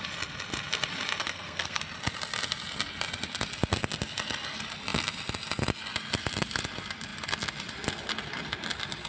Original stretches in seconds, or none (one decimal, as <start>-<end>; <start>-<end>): 0.0-1.2; 1.8-9.1